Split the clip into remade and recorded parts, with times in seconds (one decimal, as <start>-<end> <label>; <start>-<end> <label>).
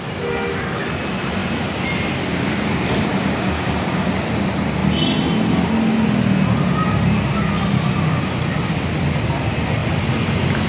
0.0-3.1 recorded; 3.1-4.1 remade; 4.1-10.7 recorded